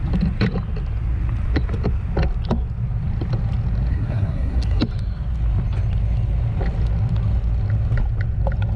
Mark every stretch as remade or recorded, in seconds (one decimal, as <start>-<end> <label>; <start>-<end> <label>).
0.0-3.9 recorded; 3.9-4.8 remade; 4.8-8.8 recorded